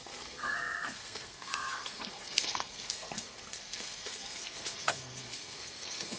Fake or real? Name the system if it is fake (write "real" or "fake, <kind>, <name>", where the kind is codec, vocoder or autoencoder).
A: fake, codec, SNAC